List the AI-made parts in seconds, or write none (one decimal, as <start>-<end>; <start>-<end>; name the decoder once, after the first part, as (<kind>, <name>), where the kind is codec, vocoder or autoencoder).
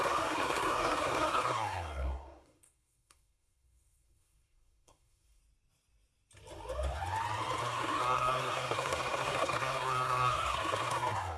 0.0-5.4 (codec, SNAC); 7.6-11.4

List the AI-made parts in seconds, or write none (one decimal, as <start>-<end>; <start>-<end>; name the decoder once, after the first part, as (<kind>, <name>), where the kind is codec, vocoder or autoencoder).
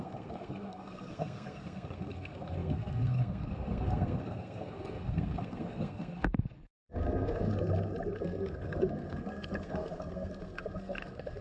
0.0-7.5 (codec, SNAC); 8.2-11.4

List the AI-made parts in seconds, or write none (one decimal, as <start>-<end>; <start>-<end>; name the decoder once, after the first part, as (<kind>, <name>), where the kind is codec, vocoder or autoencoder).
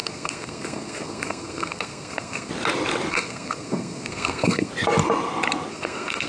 0.0-2.5 (codec, SNAC); 3.1-4.7; 5.7-6.3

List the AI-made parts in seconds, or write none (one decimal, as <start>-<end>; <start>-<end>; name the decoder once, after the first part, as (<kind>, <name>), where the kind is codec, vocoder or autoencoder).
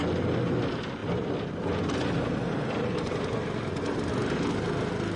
none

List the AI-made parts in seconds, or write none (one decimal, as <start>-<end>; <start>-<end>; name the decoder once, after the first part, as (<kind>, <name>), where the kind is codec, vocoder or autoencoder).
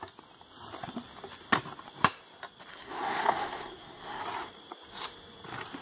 2.7-4.2 (codec, SNAC)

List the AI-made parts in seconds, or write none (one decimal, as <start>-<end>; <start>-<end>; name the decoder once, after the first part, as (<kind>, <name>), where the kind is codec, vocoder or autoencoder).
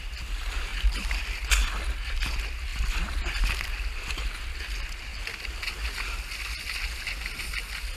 none